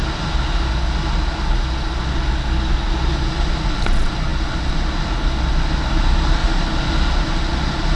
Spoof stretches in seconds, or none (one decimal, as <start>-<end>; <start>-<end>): none